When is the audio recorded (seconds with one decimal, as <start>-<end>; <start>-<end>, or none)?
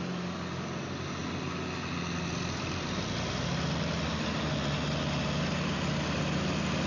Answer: 0.0-6.9